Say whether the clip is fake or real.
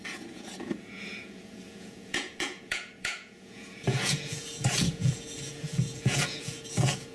fake